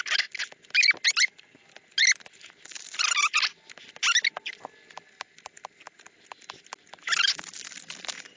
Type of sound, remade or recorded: recorded